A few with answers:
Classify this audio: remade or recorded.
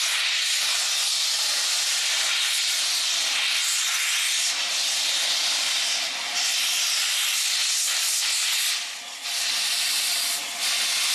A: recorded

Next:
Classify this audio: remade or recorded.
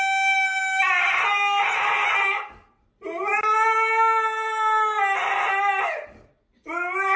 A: recorded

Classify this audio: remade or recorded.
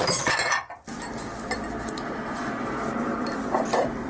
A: recorded